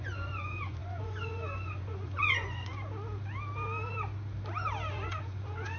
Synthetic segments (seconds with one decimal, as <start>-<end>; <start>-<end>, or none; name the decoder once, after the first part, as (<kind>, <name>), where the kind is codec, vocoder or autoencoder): 0.0-2.7 (vocoder, Vocos); 4.9-5.8